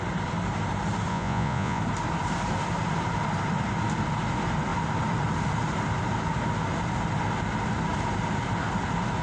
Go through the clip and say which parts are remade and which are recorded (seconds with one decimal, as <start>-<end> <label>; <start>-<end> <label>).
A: 0.0-1.1 recorded; 1.1-1.8 remade; 1.8-9.2 recorded